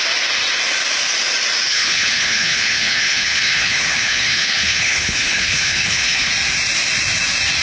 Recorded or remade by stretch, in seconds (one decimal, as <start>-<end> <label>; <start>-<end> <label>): 0.0-1.7 recorded; 1.7-6.3 remade; 6.3-7.6 recorded